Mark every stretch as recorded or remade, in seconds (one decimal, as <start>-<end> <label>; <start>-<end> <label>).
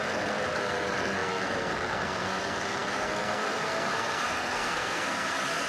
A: 0.0-5.7 remade